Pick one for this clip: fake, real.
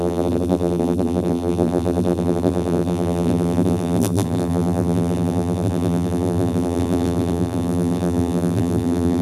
fake